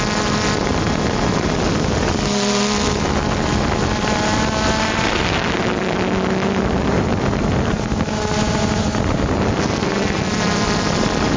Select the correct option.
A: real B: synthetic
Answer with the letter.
A